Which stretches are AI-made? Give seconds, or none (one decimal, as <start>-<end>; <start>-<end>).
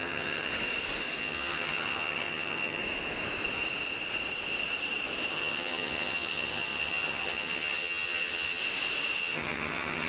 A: 0.0-0.5; 1.2-2.8; 5.3-8.6; 9.2-10.1